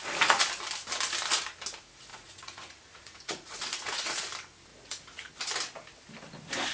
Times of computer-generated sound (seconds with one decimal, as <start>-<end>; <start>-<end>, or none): 2.1-4.2; 4.7-5.3